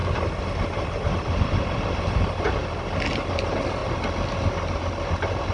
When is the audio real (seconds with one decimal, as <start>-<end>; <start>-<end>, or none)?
0.0-5.5